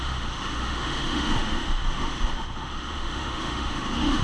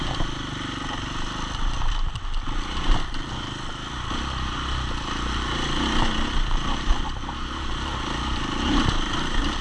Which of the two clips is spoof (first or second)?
first